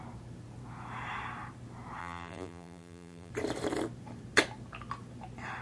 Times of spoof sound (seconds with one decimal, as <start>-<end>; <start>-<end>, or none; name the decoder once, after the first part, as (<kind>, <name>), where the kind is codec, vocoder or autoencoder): 2.0-3.3 (vocoder, BigVGAN v2)